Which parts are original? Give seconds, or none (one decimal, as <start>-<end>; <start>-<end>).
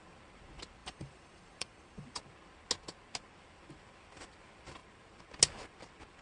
0.0-0.8; 2.2-6.2